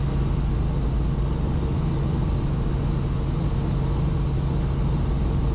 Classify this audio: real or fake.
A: real